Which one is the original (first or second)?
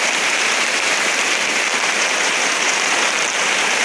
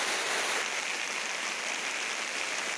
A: second